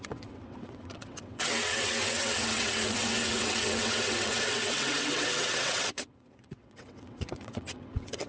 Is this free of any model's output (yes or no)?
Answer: no